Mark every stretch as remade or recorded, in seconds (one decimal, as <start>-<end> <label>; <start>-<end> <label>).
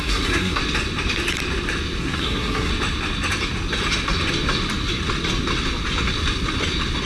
0.0-0.6 remade; 0.6-2.0 recorded; 2.0-2.7 remade; 2.7-7.1 recorded